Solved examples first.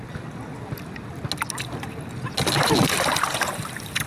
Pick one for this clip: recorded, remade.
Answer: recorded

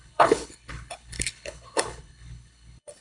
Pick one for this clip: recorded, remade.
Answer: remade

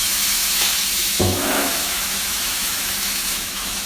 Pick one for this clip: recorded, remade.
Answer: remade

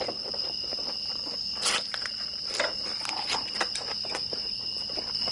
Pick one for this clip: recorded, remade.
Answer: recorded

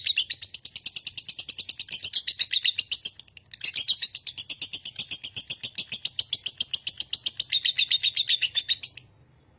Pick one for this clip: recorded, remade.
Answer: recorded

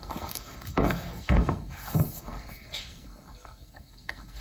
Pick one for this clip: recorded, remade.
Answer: remade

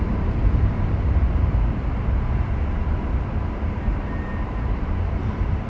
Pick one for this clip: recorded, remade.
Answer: remade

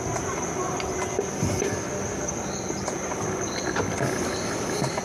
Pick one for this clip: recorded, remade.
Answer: recorded